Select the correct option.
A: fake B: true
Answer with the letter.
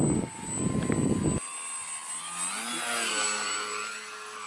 B